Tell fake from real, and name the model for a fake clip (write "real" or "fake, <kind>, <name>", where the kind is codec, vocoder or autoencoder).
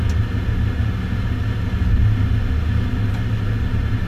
real